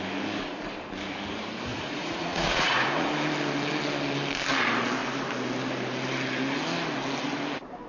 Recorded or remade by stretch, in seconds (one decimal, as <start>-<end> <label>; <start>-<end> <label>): 0.0-1.7 recorded; 1.7-3.1 remade; 3.1-7.9 recorded